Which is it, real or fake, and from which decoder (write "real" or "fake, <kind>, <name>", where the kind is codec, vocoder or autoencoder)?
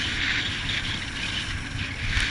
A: real